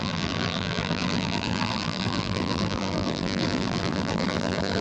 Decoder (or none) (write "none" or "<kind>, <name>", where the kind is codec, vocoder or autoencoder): vocoder, BigVGAN v2